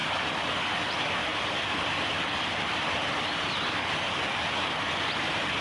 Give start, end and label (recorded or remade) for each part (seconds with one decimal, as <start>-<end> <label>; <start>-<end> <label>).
0.0-5.6 recorded